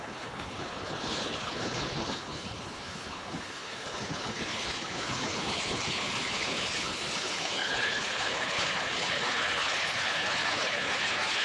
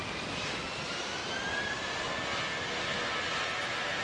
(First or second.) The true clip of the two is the second